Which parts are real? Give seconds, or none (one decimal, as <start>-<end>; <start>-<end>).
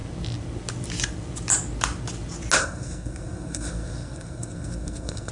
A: 0.0-2.6